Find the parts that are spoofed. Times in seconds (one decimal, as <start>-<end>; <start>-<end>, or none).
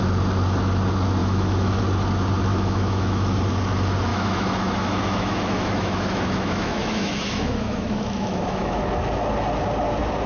1.2-1.8; 2.5-3.4; 4.1-8.8